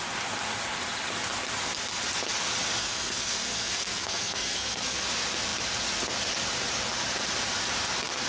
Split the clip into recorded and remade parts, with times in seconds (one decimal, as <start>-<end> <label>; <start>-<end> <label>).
0.0-2.8 recorded; 2.8-5.0 remade; 5.0-8.3 recorded